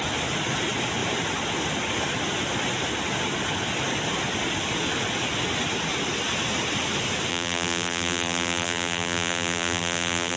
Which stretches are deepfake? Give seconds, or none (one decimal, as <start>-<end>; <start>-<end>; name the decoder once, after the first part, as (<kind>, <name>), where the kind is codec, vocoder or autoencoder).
7.3-10.4 (vocoder, BigVGAN v2)

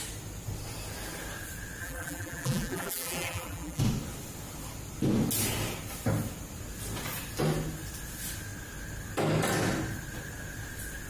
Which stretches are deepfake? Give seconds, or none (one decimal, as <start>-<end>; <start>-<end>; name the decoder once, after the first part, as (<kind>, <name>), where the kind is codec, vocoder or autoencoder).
1.8-3.8 (vocoder, BigVGAN v2)

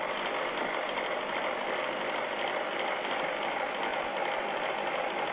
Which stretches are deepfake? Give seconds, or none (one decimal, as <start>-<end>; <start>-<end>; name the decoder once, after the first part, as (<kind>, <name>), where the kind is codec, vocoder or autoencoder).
3.9-4.7 (vocoder, BigVGAN v2)

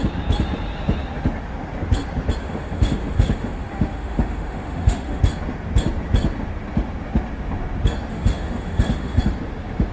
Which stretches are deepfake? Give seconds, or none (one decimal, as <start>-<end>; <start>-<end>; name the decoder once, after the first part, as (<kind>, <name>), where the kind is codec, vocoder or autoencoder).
2.4-5.2 (autoencoder, DAC-VAE); 8.1-9.2

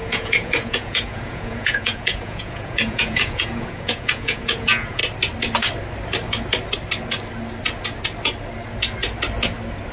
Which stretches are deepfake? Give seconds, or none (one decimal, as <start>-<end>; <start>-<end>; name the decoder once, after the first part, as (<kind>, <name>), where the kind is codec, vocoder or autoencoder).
0.0-5.0 (vocoder, Vocos)

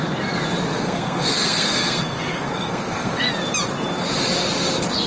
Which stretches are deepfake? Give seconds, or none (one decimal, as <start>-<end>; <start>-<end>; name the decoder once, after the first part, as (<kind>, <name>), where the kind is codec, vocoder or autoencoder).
0.7-3.3 (codec, SNAC)

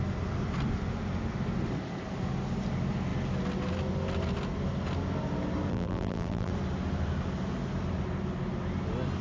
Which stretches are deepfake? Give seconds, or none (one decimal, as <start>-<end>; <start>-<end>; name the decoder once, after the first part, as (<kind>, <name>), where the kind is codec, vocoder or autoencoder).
5.7-6.5 (vocoder, BigVGAN v2)

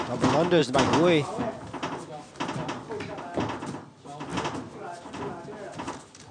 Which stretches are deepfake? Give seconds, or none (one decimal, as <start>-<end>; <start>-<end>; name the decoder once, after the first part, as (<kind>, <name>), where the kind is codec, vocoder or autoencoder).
none